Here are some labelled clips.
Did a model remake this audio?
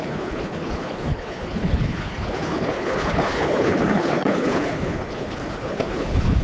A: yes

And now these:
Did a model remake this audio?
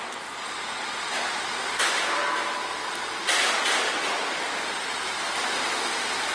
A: no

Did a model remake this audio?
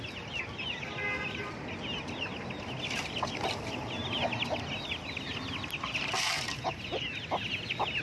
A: no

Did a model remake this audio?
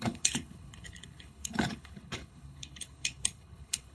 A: yes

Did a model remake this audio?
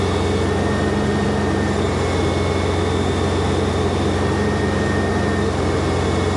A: no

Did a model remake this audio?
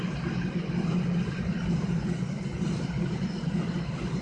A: no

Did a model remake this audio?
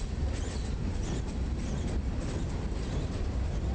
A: no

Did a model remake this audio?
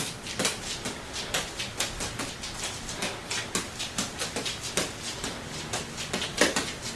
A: no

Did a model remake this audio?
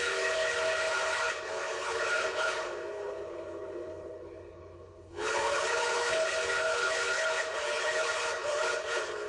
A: yes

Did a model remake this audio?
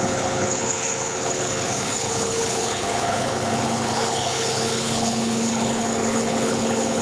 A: yes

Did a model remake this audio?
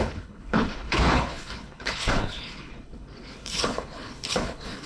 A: yes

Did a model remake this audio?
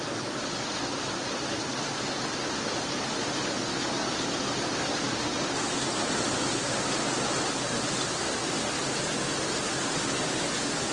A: no